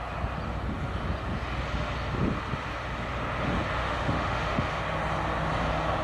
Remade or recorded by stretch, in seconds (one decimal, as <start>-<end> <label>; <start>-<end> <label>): 0.0-3.8 recorded; 3.8-4.8 remade; 4.8-6.0 recorded